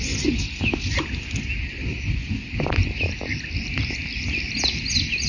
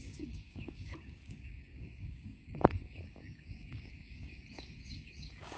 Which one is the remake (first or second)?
second